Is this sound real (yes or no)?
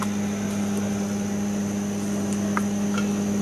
yes